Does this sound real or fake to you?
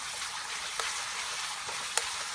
real